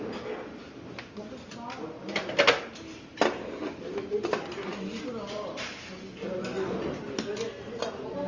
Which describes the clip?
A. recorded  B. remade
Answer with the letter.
A